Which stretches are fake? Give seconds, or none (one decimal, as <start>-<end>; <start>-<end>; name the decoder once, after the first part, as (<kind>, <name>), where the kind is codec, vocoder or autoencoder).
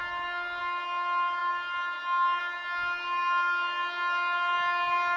none